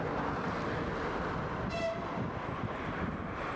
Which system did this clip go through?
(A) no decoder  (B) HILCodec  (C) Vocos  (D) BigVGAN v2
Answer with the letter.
A